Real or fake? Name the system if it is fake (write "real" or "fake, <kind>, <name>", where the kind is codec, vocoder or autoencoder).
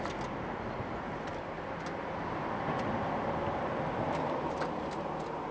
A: fake, vocoder, BigVGAN v2